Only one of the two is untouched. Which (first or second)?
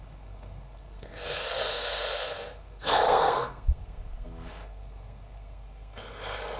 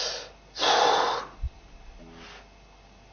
second